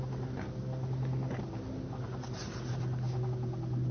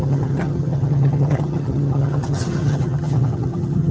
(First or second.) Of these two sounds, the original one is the first